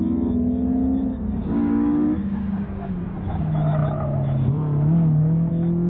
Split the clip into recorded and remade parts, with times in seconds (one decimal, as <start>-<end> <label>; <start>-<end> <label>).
0.0-1.1 recorded; 1.1-2.9 remade; 2.9-5.9 recorded